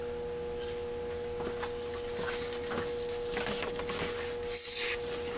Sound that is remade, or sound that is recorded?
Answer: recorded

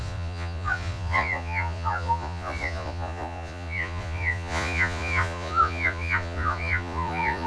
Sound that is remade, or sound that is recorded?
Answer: remade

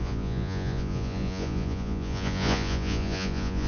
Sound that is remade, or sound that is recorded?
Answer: remade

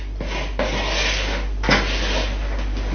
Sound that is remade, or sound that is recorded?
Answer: recorded